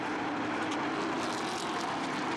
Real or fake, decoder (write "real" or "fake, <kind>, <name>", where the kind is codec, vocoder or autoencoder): real